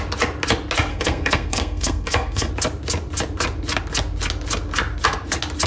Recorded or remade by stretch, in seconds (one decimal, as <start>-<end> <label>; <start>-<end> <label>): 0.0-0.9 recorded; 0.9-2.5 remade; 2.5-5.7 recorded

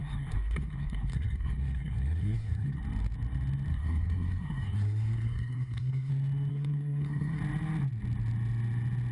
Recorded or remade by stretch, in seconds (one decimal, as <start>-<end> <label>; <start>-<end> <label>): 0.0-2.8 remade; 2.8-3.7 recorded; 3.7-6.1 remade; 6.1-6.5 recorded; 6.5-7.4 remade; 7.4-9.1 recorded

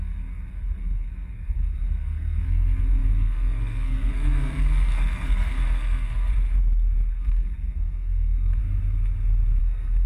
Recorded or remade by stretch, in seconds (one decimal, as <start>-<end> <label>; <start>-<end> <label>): 0.0-6.3 remade; 6.3-7.1 recorded; 7.1-8.6 remade; 8.6-9.6 recorded; 9.6-10.1 remade